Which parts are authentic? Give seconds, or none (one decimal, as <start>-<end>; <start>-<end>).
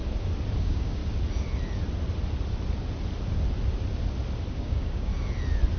0.0-0.6; 1.0-4.5; 5.1-5.8